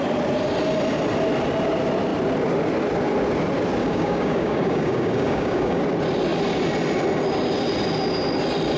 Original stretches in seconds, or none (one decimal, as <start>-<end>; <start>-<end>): 0.0-3.8; 5.8-8.8